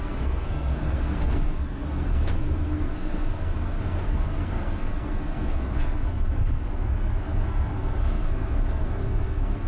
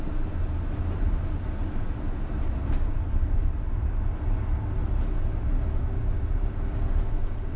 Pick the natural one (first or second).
second